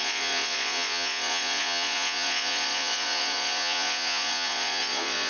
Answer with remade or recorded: remade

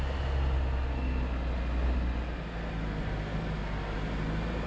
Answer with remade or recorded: recorded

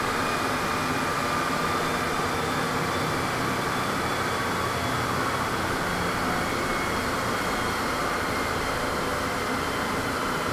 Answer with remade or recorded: recorded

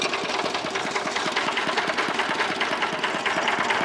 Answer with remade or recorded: recorded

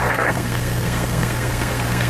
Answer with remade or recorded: remade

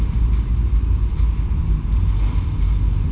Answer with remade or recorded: recorded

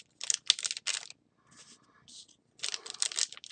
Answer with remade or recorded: recorded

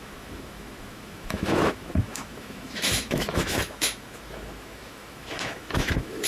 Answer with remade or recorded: remade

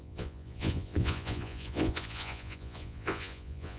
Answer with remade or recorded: remade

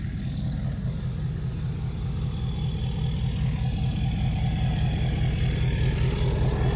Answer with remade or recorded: recorded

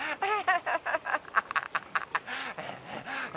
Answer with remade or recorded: recorded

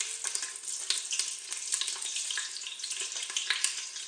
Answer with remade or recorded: recorded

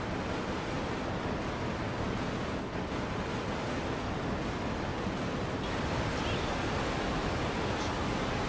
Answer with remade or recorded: recorded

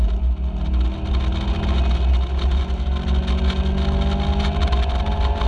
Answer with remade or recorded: recorded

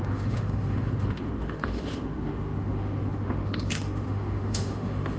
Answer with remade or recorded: remade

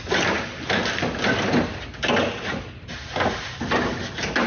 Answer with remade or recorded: recorded